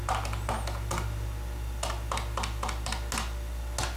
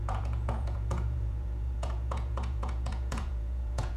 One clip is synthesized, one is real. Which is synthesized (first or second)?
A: second